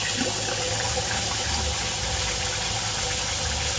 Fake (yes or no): no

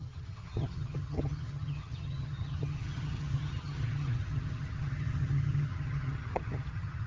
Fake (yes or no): yes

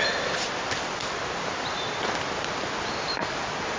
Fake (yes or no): no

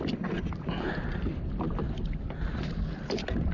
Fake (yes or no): no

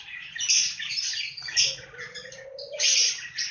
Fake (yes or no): no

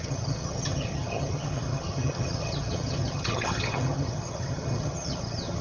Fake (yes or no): yes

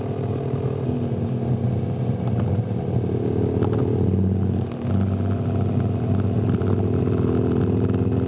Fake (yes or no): no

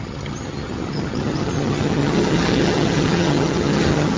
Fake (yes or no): yes